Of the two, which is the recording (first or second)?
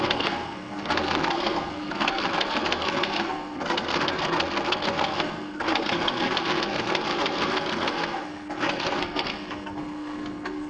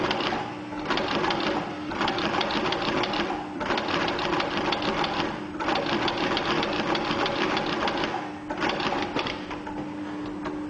second